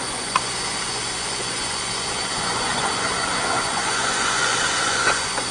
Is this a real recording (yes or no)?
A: no